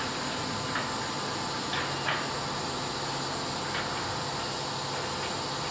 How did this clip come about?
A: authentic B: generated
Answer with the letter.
A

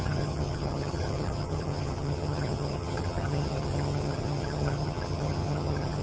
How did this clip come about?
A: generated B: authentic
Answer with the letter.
A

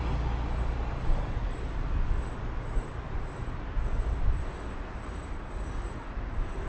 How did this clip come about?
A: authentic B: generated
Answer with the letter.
A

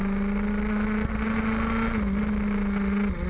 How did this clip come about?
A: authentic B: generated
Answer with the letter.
A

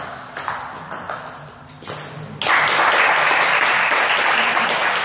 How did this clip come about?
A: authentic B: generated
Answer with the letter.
A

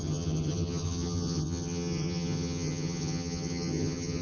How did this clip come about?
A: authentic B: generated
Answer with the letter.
B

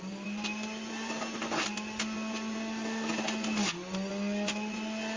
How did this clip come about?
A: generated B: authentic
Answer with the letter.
B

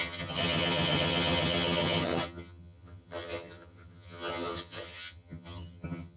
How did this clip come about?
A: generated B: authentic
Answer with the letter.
A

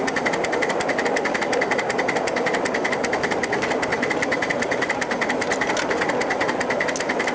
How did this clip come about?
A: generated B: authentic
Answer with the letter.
B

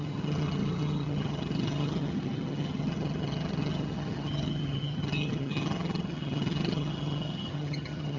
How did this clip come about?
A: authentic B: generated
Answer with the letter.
B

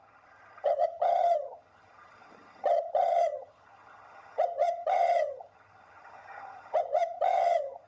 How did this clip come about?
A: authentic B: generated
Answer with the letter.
B